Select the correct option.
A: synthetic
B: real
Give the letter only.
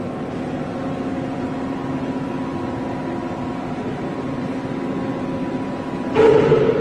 B